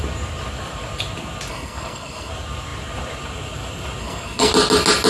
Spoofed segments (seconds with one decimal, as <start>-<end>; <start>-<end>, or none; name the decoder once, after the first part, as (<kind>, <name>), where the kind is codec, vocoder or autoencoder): 1.5-2.3 (codec, SNAC); 4.0-4.5